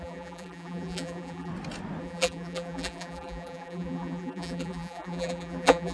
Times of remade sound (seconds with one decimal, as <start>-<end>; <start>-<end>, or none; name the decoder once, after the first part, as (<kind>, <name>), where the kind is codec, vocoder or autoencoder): 0.0-1.5 (vocoder, BigVGAN v2); 2.0-5.9